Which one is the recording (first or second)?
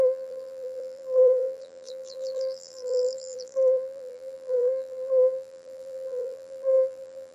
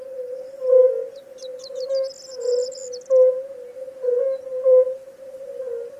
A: second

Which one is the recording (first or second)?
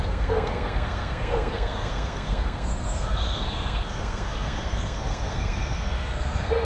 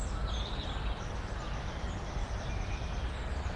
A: second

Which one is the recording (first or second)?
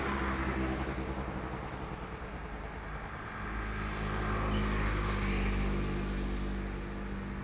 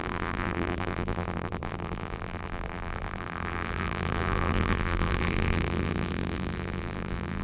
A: first